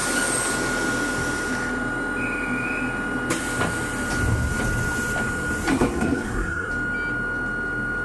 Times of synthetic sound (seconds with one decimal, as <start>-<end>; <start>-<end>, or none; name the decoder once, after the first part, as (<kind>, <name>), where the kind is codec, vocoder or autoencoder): 5.7-6.7 (codec, SNAC)